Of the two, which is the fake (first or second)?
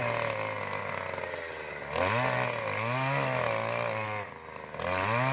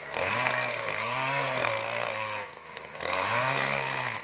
second